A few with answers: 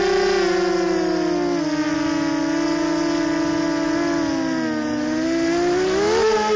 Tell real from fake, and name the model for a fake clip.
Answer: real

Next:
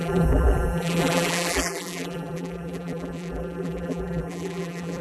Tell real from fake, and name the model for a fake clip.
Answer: fake, vocoder, BigVGAN v2